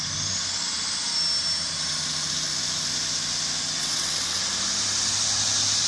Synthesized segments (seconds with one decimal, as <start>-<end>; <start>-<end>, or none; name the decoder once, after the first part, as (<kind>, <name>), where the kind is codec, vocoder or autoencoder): 3.8-4.4 (vocoder, WaveNeXt)